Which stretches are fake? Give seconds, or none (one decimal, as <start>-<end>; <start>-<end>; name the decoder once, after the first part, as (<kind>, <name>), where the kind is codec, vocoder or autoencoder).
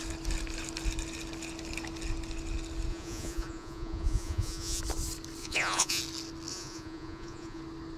2.9-4.8 (vocoder, Vocos); 5.4-6.0; 6.5-7.6